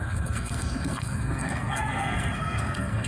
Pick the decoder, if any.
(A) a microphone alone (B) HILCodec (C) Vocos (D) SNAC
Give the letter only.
D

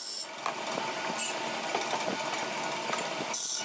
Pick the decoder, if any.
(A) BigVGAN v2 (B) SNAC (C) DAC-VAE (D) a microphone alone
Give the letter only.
D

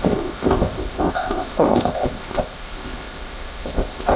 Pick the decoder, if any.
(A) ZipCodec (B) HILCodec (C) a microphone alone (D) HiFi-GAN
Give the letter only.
A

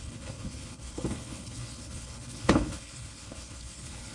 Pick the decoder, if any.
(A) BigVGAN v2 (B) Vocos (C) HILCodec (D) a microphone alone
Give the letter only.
C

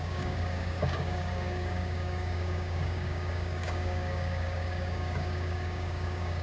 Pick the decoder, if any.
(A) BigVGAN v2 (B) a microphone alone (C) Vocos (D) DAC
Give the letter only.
D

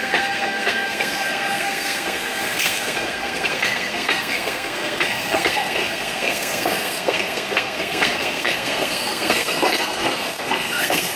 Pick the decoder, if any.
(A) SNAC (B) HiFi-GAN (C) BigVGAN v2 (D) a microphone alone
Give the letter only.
A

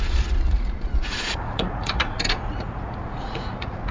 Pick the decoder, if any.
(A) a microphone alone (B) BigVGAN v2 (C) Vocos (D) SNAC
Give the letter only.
C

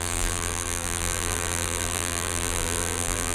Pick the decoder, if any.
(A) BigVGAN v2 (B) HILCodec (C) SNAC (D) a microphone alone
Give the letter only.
A